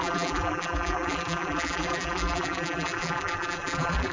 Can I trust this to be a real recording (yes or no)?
no